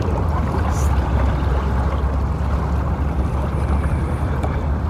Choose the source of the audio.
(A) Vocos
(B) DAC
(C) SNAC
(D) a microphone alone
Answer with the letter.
D